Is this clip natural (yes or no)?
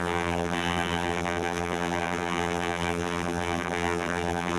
no